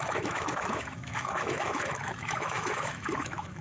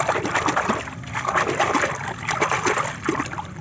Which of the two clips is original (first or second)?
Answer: second